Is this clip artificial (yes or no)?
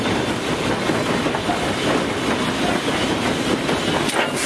no